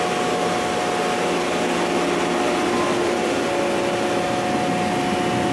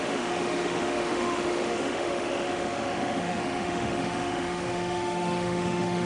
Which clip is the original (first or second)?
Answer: first